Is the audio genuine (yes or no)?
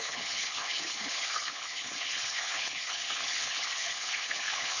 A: no